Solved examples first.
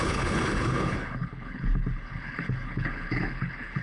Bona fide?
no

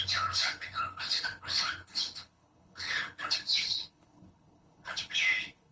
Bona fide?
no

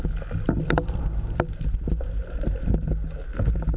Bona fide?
yes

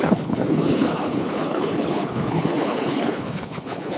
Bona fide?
no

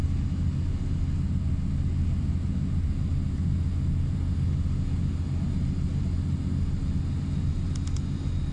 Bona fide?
yes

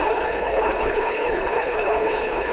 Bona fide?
no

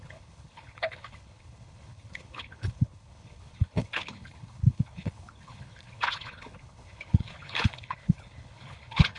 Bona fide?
no